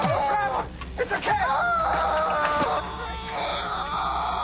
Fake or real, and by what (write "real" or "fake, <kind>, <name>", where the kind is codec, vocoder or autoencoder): real